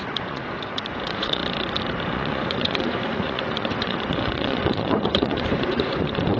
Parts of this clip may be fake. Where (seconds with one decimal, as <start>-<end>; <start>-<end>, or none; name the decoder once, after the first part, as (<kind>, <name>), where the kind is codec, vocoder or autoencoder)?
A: 0.0-1.4 (vocoder, Vocos); 2.1-6.4